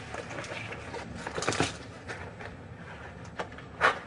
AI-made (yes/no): no